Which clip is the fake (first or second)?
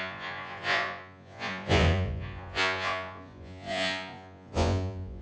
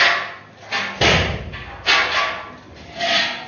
first